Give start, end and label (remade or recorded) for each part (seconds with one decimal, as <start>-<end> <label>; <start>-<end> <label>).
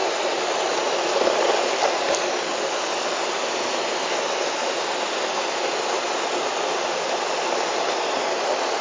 0.0-4.1 remade; 4.1-8.8 recorded